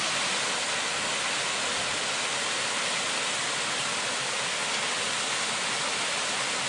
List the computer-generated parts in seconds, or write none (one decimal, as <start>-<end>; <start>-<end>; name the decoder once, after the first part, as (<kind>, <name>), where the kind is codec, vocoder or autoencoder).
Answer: none